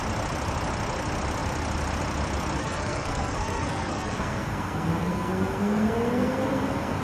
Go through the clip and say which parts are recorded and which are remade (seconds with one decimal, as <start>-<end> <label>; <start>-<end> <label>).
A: 0.0-2.6 recorded; 2.6-7.0 remade

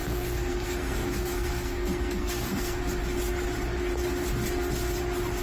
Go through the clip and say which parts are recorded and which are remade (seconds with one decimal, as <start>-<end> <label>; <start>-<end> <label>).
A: 0.0-2.8 remade; 2.8-5.4 recorded

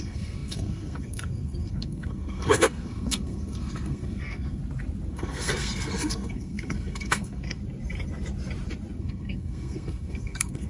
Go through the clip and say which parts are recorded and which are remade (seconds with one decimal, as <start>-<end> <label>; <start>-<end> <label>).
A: 0.0-4.6 remade; 4.6-5.1 recorded; 5.1-7.6 remade; 7.6-9.0 recorded; 9.0-10.7 remade